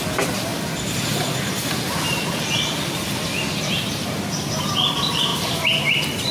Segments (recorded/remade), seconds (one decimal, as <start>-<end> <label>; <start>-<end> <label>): 0.0-6.3 recorded

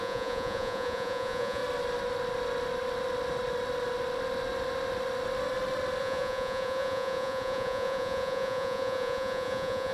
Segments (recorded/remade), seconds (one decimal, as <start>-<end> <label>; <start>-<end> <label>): 0.0-1.6 remade; 1.6-6.0 recorded; 6.0-9.9 remade

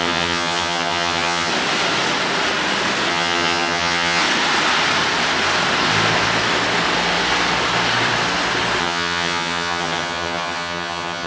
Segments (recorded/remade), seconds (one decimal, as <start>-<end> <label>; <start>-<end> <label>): 0.0-1.5 remade; 1.5-3.1 recorded; 3.1-4.2 remade; 4.2-8.8 recorded; 8.8-11.3 remade

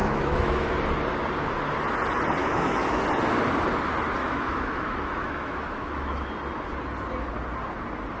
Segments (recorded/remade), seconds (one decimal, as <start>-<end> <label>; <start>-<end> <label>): 0.0-0.7 remade; 0.7-2.4 recorded; 2.4-3.0 remade; 3.0-4.2 recorded; 4.2-6.3 remade; 6.3-8.2 recorded